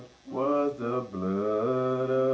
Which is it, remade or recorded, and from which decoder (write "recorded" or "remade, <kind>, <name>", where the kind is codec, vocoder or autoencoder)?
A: recorded